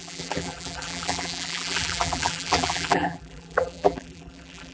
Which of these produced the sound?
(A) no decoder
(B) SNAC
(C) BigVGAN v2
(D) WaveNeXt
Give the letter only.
C